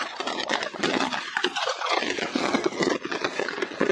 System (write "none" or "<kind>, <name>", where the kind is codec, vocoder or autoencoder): vocoder, Vocos